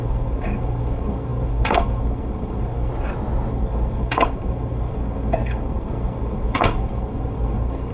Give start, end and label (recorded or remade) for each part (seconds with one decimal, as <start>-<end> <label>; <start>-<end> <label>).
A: 0.0-2.9 remade; 2.9-3.5 recorded; 3.5-7.9 remade